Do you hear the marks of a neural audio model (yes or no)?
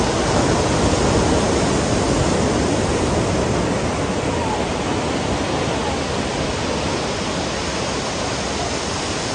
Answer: no